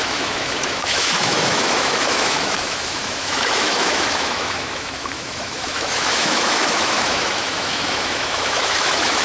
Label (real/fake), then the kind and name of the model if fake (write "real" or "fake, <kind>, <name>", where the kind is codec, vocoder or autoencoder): fake, autoencoder, DAC-VAE